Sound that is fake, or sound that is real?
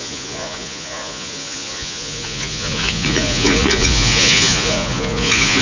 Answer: fake